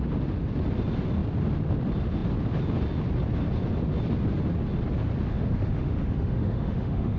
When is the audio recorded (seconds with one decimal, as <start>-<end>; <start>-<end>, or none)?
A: 0.0-5.3

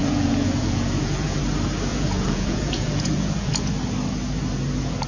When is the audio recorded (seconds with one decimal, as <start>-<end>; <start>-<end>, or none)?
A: 1.4-1.9; 3.7-5.1

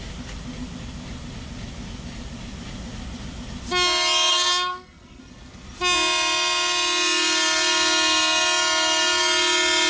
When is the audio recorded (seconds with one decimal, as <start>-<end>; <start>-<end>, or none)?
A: 0.0-4.3; 5.2-9.9

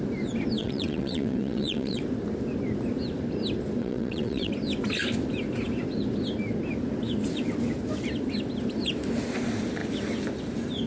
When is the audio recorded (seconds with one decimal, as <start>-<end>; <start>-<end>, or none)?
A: 0.0-0.6; 2.0-3.8; 4.5-10.9

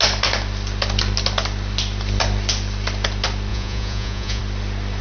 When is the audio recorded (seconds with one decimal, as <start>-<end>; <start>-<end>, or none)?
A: 0.0-3.5; 4.4-5.0

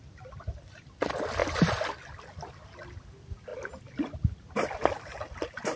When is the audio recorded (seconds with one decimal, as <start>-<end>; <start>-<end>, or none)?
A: 0.0-5.8

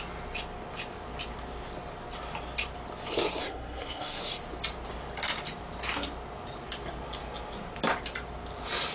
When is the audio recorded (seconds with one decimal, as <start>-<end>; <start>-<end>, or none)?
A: 0.0-3.4; 4.2-8.9

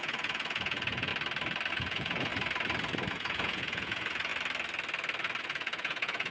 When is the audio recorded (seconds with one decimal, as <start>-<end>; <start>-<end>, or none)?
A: 1.1-1.7; 2.3-3.1; 4.3-5.4